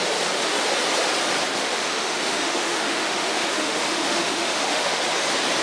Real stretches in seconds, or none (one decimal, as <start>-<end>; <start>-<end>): 0.0-1.6; 5.0-5.6